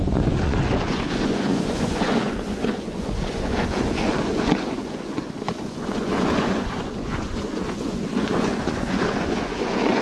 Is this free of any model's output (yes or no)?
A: no